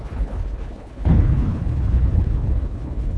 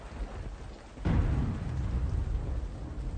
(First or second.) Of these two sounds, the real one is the second